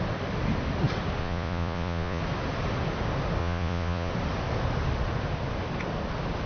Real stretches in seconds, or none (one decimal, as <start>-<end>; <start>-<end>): 0.0-1.2; 2.2-3.4; 4.1-6.5